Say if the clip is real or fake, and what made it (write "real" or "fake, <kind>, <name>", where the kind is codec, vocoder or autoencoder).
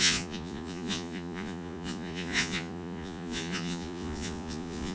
fake, vocoder, Vocos